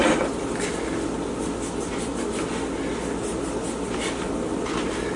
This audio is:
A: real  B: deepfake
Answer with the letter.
A